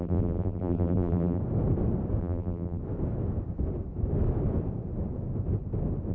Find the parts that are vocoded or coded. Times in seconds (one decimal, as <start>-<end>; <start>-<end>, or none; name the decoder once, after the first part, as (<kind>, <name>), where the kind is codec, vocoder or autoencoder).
0.0-1.4 (vocoder, BigVGAN v2); 2.2-2.8